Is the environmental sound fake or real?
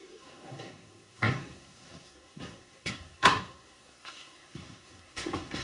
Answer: fake